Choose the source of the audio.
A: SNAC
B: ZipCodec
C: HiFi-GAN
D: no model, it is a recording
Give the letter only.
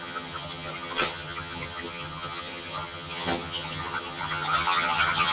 C